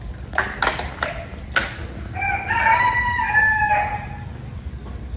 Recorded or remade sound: recorded